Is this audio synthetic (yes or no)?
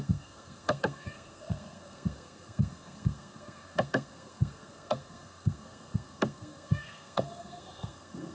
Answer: yes